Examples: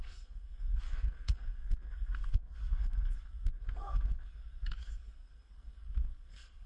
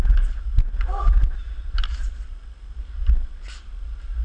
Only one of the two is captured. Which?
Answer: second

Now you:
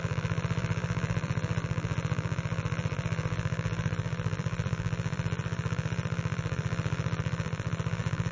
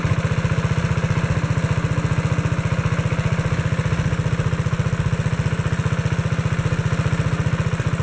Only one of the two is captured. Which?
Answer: second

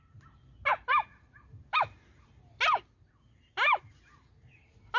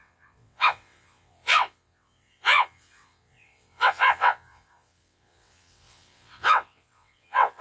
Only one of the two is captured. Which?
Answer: first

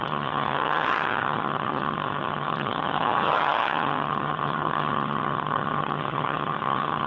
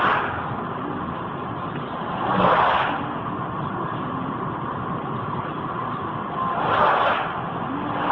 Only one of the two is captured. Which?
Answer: second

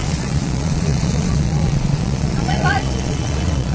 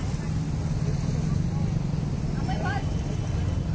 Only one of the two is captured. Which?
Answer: second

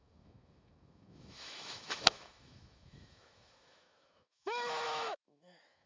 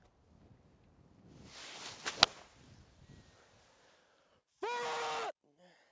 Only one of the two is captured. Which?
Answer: second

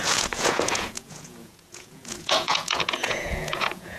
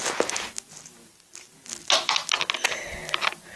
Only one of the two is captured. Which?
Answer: second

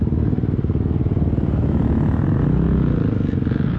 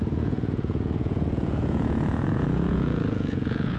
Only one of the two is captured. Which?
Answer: first